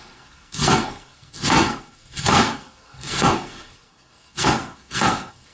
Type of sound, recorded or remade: remade